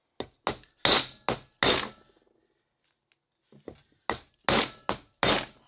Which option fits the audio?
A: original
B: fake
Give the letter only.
A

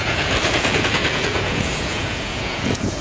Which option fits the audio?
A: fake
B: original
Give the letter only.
A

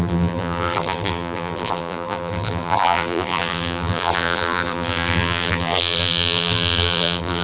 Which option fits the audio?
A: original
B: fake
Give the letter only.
B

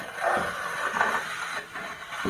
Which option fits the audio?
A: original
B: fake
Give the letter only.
A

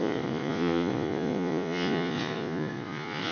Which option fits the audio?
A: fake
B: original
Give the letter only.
A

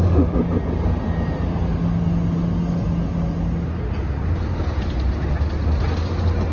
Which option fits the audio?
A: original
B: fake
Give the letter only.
A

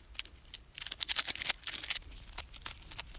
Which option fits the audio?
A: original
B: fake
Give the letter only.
A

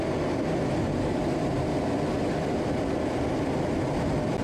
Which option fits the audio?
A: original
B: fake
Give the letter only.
A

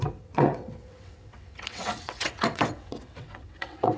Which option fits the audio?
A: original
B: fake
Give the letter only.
B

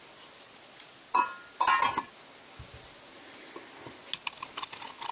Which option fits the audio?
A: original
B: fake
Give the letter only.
A